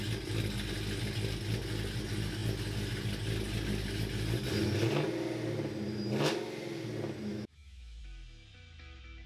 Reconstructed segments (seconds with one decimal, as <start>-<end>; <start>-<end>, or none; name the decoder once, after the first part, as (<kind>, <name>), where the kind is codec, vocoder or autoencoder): 7.3-8.0 (autoencoder, DAC-VAE)